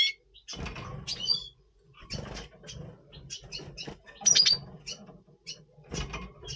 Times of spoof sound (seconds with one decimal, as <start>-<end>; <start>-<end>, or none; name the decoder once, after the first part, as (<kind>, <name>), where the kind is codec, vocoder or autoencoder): 1.1-2.1 (vocoder, Vocos)